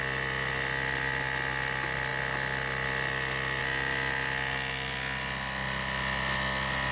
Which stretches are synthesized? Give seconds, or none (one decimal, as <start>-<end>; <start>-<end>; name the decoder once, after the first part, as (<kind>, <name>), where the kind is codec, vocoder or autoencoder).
none